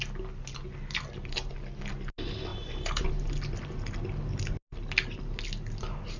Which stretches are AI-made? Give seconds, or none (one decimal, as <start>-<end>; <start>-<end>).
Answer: 2.5-3.1